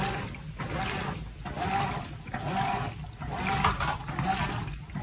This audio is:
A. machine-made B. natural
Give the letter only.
B